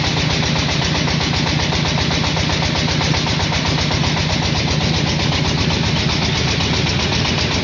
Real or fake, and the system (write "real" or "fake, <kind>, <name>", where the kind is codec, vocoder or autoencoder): real